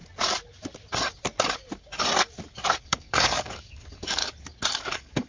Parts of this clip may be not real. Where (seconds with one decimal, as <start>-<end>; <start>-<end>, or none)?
2.8-4.2; 4.8-5.3